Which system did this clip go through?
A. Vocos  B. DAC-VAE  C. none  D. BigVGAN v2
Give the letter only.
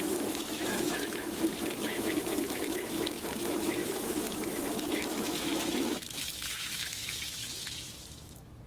B